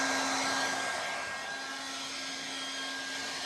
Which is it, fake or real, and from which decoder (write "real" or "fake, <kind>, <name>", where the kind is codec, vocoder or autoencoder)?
fake, vocoder, BigVGAN v2